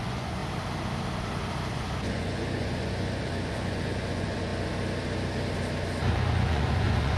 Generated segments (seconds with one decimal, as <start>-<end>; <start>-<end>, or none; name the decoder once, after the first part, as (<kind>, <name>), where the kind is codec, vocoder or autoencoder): 0.0-0.4 (vocoder, Vocos); 1.7-4.5; 6.1-7.2